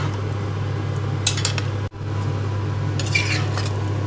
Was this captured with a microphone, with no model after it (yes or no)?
yes